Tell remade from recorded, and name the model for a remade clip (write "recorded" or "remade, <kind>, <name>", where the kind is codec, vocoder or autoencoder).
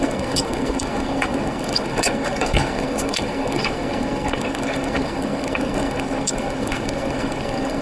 remade, codec, SNAC